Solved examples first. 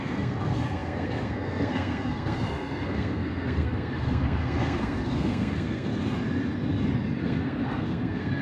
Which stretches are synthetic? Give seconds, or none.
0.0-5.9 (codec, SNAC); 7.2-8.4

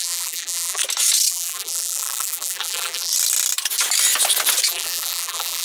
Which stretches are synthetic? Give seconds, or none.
0.0-0.8 (vocoder, BigVGAN v2); 1.3-3.1; 4.7-5.6

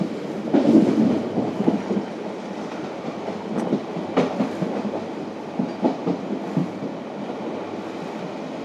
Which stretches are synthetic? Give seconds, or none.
3.9-4.4 (vocoder, BigVGAN v2); 6.6-7.2

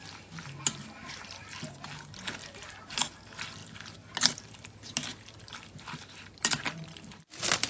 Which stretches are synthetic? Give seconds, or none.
none

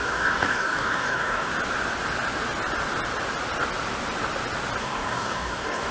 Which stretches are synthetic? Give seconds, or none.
0.0-1.5 (codec, DAC); 4.8-5.9

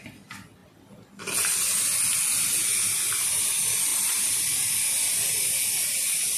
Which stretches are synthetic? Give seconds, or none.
3.9-4.7 (vocoder, BigVGAN v2)

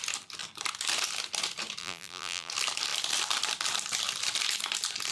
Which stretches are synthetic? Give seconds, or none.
1.8-2.5 (vocoder, BigVGAN v2)